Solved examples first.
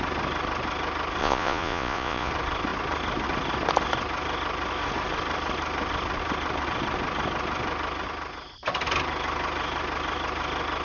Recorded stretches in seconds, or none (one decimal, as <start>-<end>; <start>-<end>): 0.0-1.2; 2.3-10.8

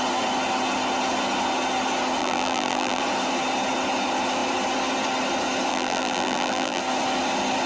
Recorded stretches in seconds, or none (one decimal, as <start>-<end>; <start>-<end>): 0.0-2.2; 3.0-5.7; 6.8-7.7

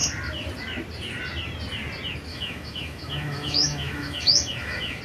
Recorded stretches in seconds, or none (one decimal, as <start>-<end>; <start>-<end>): 0.0-2.3

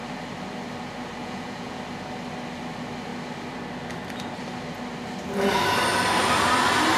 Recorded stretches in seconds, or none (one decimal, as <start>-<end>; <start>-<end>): 0.0-1.2; 1.8-7.0

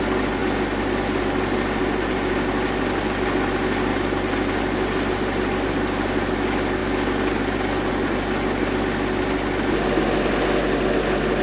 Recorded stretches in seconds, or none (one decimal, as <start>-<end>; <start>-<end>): 0.0-11.4

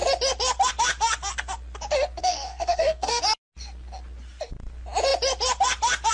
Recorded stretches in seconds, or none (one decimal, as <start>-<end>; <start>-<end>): 0.0-2.2; 3.2-6.1

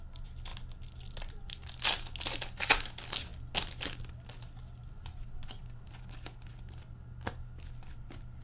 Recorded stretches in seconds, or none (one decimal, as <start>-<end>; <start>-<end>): 0.0-8.4

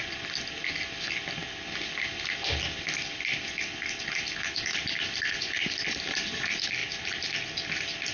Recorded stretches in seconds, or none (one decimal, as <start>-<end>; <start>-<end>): 0.0-1.4; 3.6-4.7; 5.7-6.8; 7.3-8.1